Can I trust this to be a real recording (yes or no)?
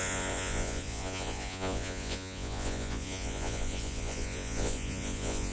no